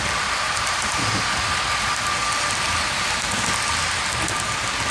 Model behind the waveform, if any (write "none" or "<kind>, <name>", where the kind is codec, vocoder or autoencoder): none